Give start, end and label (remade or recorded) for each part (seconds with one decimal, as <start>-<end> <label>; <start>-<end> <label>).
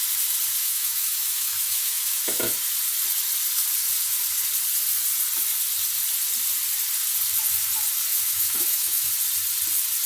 0.0-0.6 recorded; 0.6-2.5 remade; 2.5-8.1 recorded; 8.1-9.1 remade; 9.1-10.1 recorded